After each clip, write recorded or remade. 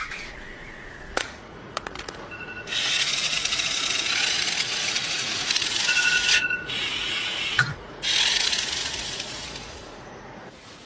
remade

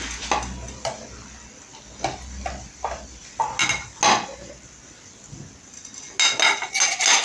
recorded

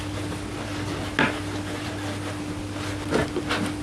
recorded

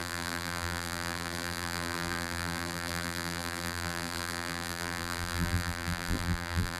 remade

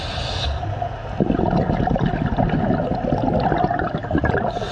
recorded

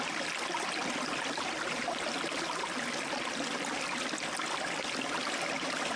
recorded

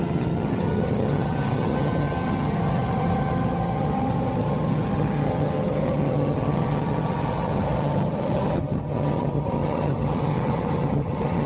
remade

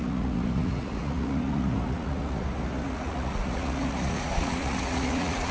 remade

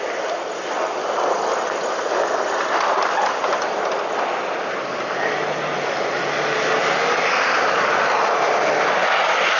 recorded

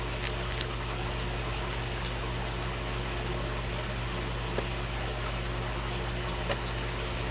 recorded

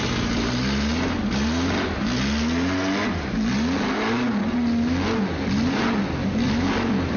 recorded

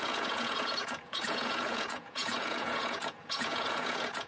remade